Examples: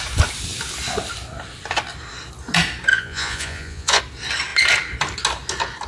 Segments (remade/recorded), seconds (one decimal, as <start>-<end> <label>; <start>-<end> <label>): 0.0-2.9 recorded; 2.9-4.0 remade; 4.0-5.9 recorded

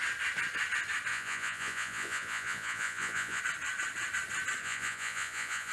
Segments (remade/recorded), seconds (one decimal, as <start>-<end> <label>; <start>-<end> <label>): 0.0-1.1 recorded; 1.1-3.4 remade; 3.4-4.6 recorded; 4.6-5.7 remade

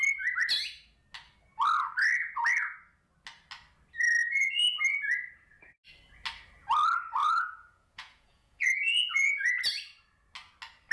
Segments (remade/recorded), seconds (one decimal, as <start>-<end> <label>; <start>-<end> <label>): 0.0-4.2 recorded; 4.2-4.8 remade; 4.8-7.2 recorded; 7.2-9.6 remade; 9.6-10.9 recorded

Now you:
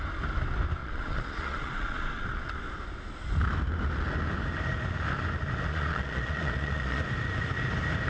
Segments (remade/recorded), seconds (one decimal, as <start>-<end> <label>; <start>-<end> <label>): 0.0-0.8 recorded; 0.8-2.5 remade; 2.5-5.7 recorded; 5.7-7.0 remade; 7.0-8.1 recorded

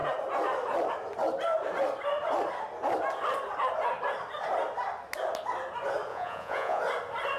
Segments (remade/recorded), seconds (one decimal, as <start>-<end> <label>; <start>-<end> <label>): 0.0-6.1 recorded; 6.1-6.8 remade; 6.8-7.4 recorded